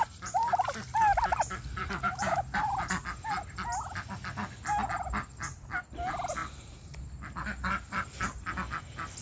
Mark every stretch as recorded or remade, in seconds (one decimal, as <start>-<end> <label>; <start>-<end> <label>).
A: 0.0-1.8 recorded; 1.8-2.7 remade; 2.7-6.4 recorded; 6.4-7.0 remade; 7.0-9.2 recorded